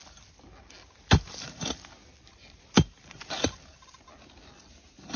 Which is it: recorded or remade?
recorded